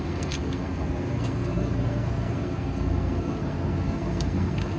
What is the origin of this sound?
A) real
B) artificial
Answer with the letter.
B